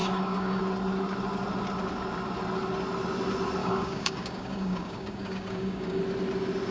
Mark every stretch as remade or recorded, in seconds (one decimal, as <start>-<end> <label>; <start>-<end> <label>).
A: 0.0-0.6 remade; 0.6-3.6 recorded; 3.6-6.0 remade; 6.0-6.7 recorded